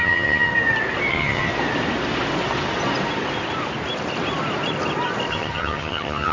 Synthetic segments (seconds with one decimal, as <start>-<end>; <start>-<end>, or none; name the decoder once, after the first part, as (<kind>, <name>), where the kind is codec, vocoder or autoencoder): 0.0-0.5 (vocoder, HiFi-GAN); 1.1-1.5; 5.3-6.3

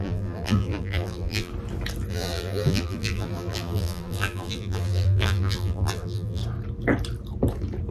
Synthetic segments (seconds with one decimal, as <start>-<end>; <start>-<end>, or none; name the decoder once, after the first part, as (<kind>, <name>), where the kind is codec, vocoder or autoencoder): 0.0-1.5 (vocoder, BigVGAN v2); 2.1-6.4